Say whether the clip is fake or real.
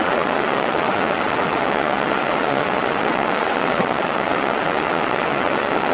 fake